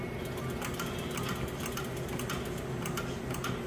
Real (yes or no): yes